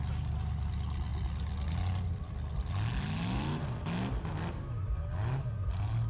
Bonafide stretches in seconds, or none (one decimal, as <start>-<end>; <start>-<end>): 0.0-6.1